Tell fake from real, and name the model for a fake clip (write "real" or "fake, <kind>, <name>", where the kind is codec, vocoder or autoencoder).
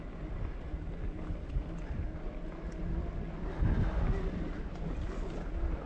real